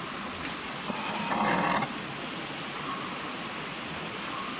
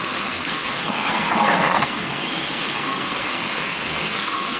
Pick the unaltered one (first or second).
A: first